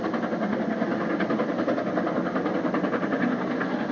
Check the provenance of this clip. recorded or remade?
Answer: recorded